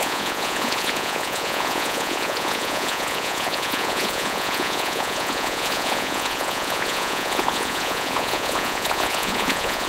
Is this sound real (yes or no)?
no